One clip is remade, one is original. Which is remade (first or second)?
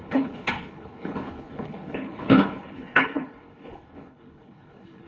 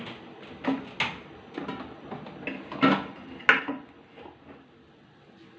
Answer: first